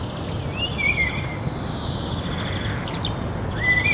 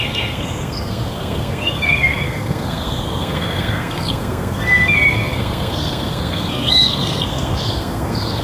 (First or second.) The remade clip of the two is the second